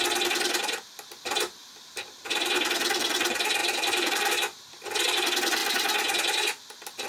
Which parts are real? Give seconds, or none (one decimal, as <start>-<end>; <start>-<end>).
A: 0.0-3.6; 4.3-7.1